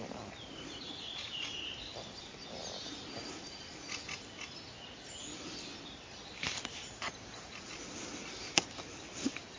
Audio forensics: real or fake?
real